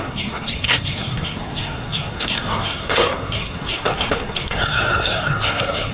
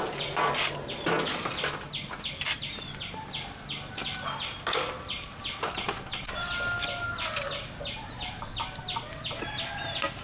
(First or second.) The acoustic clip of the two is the second